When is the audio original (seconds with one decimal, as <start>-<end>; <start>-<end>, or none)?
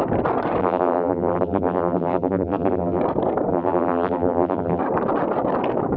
0.0-0.6; 3.0-3.5; 4.8-6.0